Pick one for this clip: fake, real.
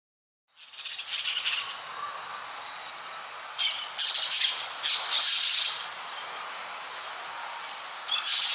real